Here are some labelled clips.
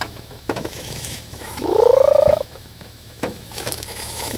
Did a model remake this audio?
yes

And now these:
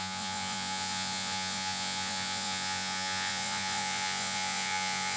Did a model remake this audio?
yes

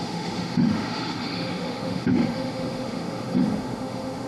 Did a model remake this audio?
yes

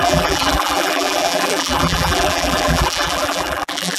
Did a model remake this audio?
yes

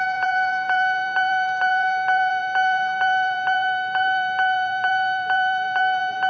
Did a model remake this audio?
yes